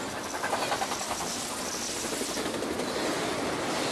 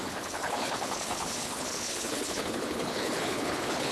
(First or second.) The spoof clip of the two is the second